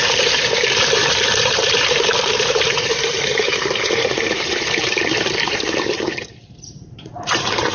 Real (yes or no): no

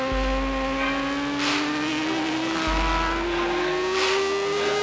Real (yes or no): yes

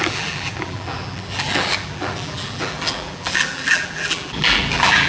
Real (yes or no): no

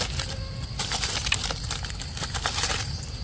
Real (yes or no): yes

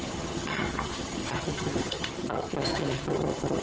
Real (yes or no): no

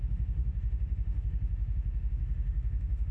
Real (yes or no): no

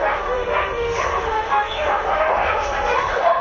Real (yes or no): no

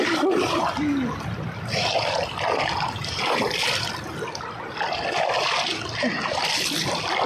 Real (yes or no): yes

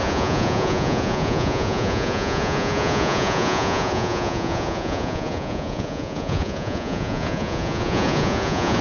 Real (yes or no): no